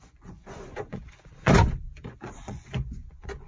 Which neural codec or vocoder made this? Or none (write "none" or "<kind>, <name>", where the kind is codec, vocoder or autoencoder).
vocoder, Vocos